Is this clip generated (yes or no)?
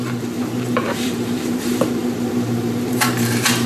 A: yes